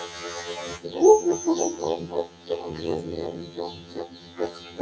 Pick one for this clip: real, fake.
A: fake